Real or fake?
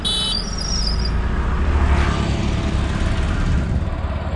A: real